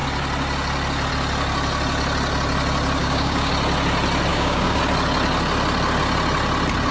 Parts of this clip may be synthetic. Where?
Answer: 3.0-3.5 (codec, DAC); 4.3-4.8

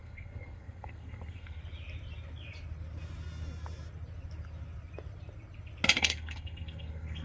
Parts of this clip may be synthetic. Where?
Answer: 0.0-1.6 (codec, SNAC); 5.9-7.2

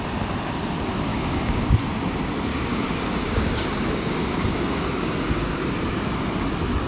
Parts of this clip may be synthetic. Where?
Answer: 1.1-1.7 (codec, DAC); 2.5-5.7

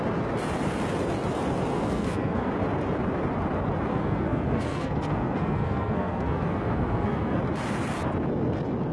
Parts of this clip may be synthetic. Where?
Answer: 1.7-2.5 (codec, SNAC); 3.9-7.4

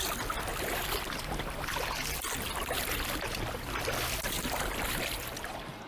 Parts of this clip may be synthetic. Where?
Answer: none